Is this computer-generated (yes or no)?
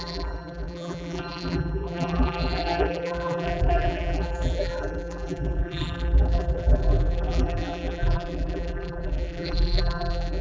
yes